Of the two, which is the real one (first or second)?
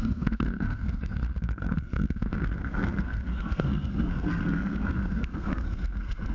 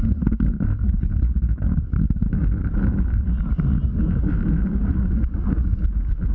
second